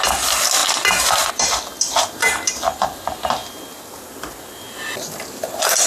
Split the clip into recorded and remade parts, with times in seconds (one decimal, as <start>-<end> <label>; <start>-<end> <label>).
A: 0.0-5.9 recorded